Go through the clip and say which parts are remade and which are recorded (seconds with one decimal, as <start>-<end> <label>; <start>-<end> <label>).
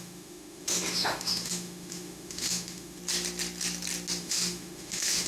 0.0-3.0 remade; 3.0-4.2 recorded; 4.2-5.3 remade